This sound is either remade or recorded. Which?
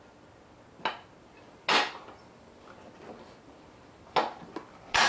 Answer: recorded